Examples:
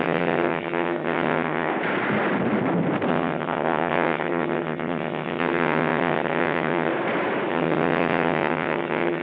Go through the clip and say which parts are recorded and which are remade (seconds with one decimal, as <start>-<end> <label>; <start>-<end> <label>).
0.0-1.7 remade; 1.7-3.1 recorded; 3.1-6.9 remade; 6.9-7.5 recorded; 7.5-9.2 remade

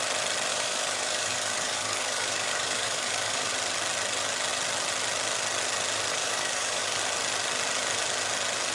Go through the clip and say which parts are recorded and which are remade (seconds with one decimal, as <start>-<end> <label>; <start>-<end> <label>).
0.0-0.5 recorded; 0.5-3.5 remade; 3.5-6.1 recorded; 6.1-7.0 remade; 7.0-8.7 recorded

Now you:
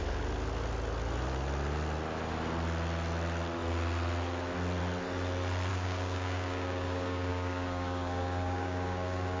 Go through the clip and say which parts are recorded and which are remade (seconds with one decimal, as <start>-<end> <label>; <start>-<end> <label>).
0.0-5.7 recorded; 5.7-9.4 remade

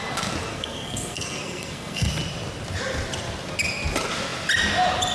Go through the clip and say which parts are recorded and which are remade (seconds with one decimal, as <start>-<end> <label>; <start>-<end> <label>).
0.0-0.5 recorded; 0.5-2.1 remade; 2.1-5.1 recorded

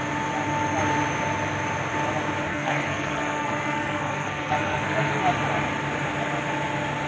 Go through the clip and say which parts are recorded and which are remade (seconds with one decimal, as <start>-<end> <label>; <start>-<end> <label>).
0.0-2.5 recorded; 2.5-5.2 remade; 5.2-7.1 recorded

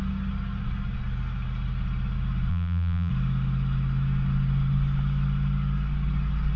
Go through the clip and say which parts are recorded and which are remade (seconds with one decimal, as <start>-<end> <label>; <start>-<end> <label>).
0.0-2.5 recorded; 2.5-3.1 remade; 3.1-6.6 recorded